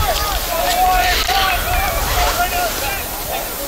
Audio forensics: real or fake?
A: real